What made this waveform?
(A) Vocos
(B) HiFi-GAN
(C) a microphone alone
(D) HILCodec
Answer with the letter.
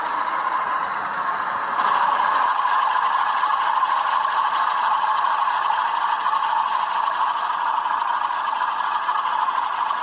A